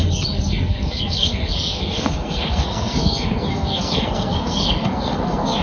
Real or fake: fake